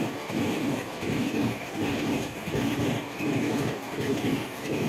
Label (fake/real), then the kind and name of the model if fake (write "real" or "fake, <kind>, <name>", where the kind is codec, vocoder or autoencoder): fake, codec, DAC